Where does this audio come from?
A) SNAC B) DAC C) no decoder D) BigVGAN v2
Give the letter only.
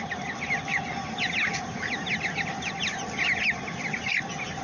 C